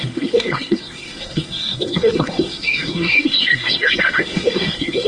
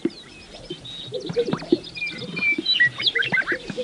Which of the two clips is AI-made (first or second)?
first